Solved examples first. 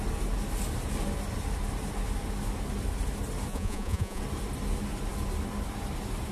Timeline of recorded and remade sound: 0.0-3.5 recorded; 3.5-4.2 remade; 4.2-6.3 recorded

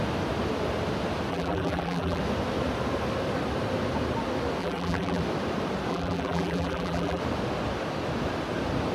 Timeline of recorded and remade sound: 0.0-1.3 recorded; 1.3-2.2 remade; 2.2-4.6 recorded; 4.6-5.2 remade; 5.2-5.9 recorded; 5.9-7.2 remade; 7.2-8.9 recorded

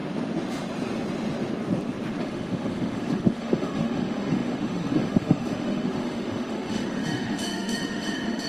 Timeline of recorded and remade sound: 0.0-2.2 recorded; 2.2-8.5 remade

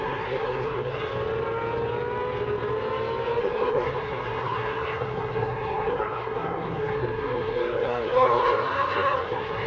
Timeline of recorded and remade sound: 0.0-1.1 remade; 1.1-3.4 recorded; 3.4-9.7 remade